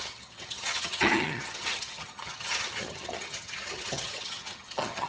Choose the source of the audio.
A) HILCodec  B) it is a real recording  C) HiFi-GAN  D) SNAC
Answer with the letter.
C